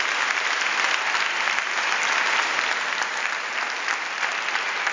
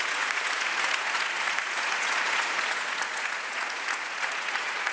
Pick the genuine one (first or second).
first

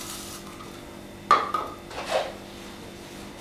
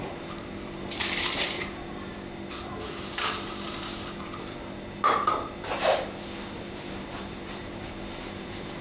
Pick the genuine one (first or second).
first